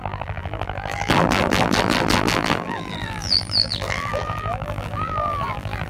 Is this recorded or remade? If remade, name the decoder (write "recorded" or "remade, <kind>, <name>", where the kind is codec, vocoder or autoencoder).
remade, vocoder, BigVGAN v2